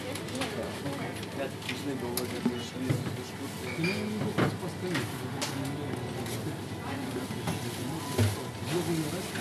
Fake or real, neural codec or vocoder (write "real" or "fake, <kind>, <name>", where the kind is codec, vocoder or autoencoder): real